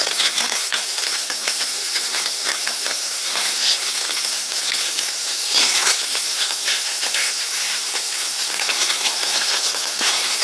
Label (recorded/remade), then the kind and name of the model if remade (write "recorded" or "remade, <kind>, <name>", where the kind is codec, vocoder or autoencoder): remade, codec, SNAC